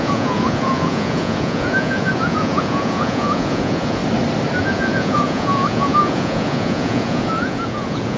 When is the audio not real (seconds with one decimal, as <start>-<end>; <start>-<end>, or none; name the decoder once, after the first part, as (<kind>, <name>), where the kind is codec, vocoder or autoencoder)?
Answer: 0.0-4.0 (vocoder, Vocos); 4.6-8.2